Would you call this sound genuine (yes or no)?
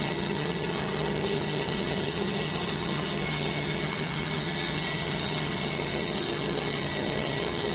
no